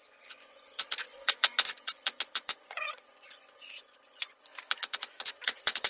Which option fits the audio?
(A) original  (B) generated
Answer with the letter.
B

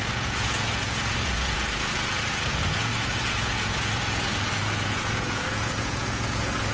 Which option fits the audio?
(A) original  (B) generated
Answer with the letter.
B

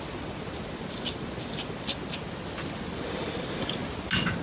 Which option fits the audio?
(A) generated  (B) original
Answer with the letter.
B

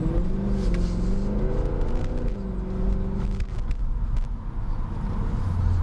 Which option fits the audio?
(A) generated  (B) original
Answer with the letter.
B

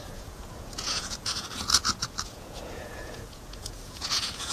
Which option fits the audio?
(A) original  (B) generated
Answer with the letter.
B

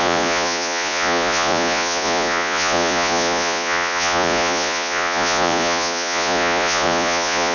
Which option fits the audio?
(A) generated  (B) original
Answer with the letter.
A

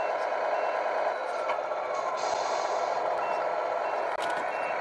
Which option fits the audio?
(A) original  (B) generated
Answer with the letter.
A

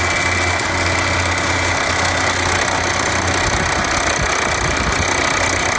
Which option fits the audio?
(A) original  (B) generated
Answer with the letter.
A